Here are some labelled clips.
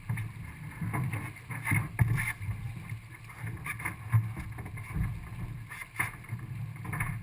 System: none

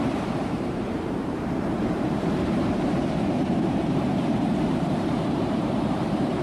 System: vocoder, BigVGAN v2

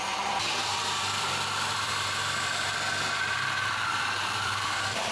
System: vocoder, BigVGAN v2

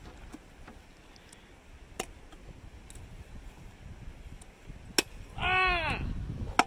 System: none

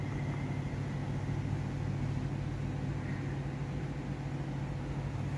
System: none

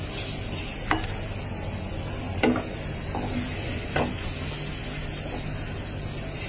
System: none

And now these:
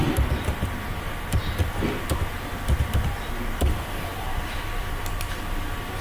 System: vocoder, BigVGAN v2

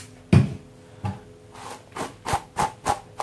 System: none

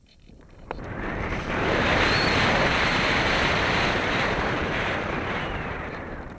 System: vocoder, BigVGAN v2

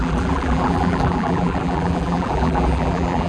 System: vocoder, BigVGAN v2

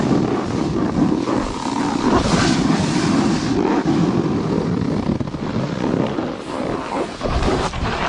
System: vocoder, BigVGAN v2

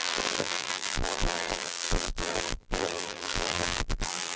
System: vocoder, BigVGAN v2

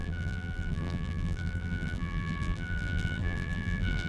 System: vocoder, BigVGAN v2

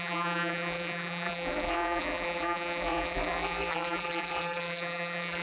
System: vocoder, BigVGAN v2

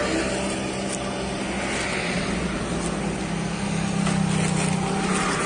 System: none